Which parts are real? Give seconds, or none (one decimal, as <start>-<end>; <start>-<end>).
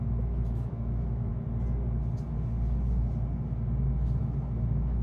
1.3-4.2